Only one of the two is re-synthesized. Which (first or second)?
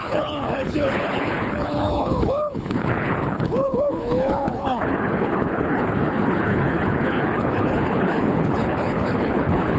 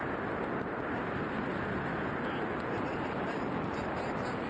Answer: first